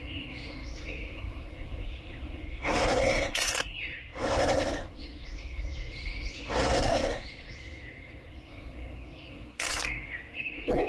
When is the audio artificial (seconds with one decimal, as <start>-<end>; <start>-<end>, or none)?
0.0-10.9